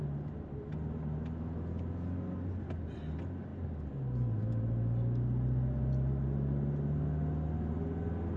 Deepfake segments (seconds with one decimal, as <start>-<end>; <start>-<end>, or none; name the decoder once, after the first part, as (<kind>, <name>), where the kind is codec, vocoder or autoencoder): none